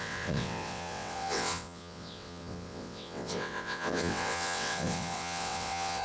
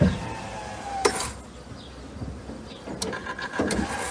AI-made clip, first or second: first